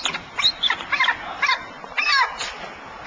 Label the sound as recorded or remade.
recorded